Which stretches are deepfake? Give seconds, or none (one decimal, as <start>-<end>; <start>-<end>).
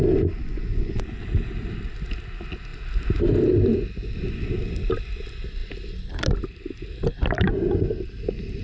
0.4-1.0